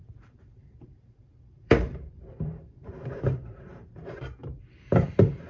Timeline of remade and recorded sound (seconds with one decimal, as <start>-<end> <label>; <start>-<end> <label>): 0.0-5.5 remade